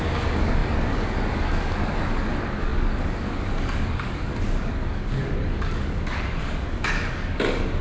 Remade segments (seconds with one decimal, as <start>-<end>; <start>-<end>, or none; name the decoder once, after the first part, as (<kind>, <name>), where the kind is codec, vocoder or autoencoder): 0.0-7.8 (codec, DAC)